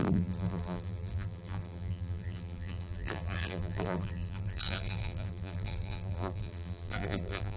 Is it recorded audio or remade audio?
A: remade